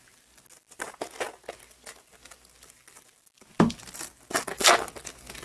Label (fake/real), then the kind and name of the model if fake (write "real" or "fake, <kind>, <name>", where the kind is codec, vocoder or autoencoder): real